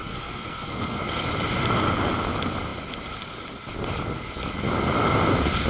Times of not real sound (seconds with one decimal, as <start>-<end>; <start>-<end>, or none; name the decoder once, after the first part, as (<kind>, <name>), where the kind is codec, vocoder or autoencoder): 0.0-1.0 (codec, SNAC)